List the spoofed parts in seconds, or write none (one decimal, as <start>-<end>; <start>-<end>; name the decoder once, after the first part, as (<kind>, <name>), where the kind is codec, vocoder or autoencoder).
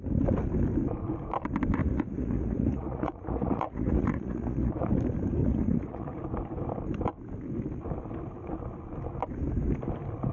1.8-4.9 (vocoder, Vocos); 5.4-6.2